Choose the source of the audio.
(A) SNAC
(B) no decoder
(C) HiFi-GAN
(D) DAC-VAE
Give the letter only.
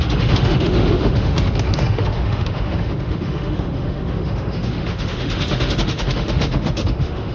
D